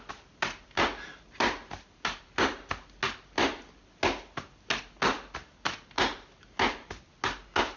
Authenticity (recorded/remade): recorded